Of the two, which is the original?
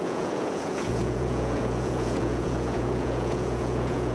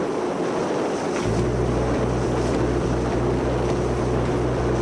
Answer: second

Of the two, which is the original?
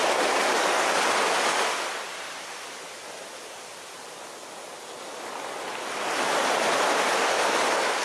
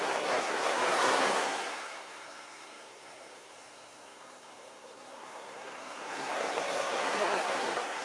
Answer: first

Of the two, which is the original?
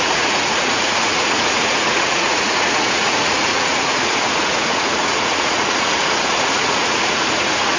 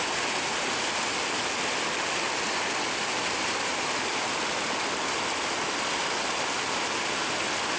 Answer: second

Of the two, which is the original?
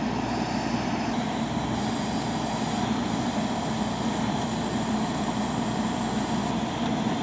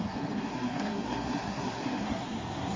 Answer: first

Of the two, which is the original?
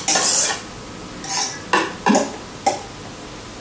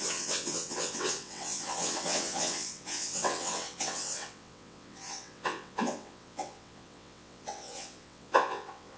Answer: first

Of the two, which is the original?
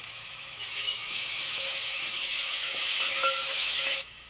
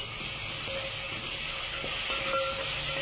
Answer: second